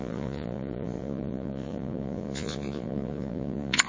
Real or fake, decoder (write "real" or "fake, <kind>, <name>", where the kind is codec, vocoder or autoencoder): fake, vocoder, Vocos